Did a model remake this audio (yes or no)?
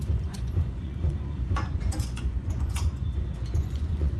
yes